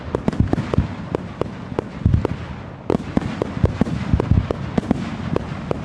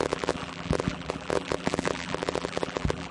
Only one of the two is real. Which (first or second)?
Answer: first